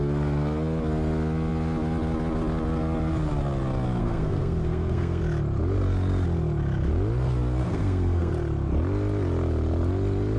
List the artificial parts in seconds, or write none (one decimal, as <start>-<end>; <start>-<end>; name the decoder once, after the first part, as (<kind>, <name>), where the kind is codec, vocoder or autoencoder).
4.0-5.2 (codec, SNAC); 7.6-8.3